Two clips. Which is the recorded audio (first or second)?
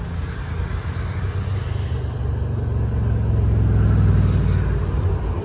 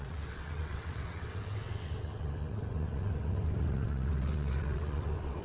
first